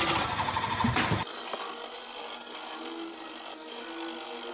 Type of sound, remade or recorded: recorded